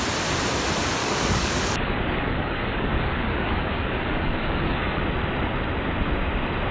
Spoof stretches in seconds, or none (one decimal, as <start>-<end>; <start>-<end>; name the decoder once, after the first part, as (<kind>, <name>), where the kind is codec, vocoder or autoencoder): 1.0-5.0 (codec, DAC)